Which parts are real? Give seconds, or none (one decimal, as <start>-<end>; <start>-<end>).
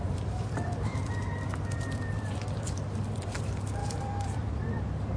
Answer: none